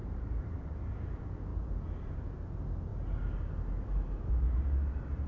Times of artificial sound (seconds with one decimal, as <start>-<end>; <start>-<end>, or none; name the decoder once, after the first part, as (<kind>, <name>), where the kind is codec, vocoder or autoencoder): 0.0-0.9 (vocoder, BigVGAN v2)